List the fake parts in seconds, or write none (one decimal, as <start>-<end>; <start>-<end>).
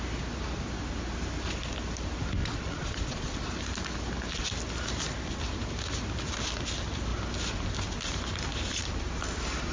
2.4-3.3